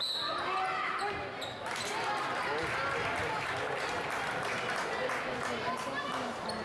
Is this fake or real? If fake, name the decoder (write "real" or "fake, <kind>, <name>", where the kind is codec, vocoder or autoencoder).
real